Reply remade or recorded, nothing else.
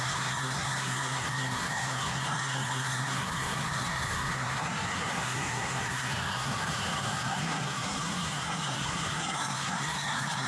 remade